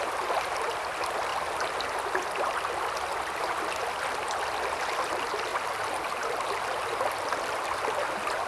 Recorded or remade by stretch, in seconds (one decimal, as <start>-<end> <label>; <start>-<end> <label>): 0.0-5.5 recorded; 5.5-8.5 remade